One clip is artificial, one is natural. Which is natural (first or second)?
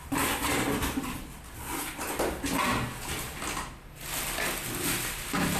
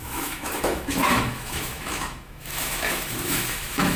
first